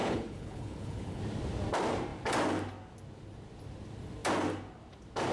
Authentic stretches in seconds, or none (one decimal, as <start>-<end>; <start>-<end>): 1.2-5.3